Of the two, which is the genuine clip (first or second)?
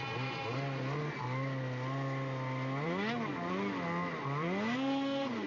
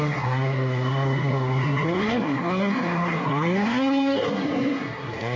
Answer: first